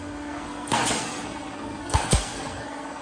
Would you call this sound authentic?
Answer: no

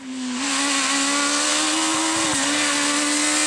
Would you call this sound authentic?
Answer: yes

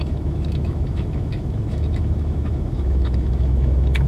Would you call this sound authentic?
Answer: no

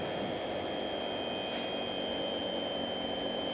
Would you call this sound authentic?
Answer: yes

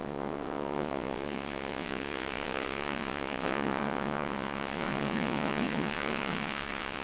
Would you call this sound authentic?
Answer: no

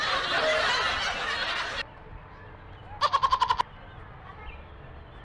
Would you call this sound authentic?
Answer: yes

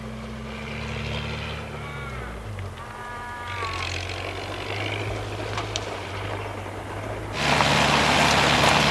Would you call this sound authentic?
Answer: yes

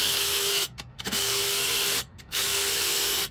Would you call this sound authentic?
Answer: no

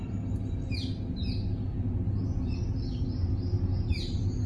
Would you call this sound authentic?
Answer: yes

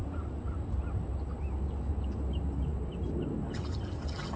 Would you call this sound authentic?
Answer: yes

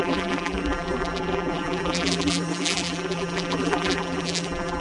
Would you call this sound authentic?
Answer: no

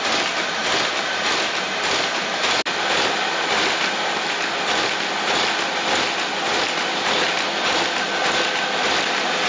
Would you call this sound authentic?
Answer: yes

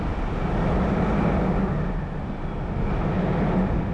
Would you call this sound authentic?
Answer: yes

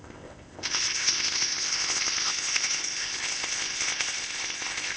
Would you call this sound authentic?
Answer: no